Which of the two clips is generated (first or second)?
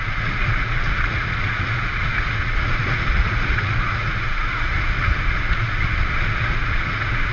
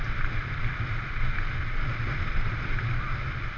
first